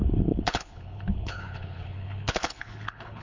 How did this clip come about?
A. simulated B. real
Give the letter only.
A